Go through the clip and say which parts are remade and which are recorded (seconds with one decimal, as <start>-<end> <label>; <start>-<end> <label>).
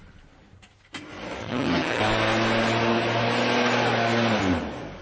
0.0-1.4 recorded; 1.4-2.0 remade; 2.0-5.0 recorded